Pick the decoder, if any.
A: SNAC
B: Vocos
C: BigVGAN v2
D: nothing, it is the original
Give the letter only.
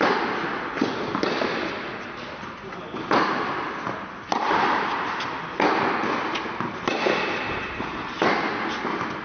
D